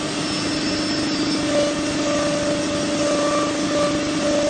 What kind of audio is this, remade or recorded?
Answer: recorded